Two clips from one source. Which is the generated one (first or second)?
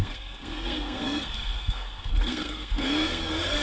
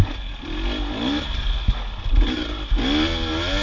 first